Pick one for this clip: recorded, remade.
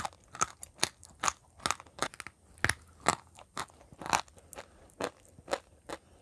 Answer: recorded